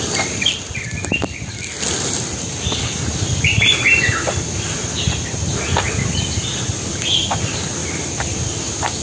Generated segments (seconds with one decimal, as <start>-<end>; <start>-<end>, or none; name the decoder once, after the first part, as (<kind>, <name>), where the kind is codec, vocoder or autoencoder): 7.8-8.4 (vocoder, BigVGAN v2)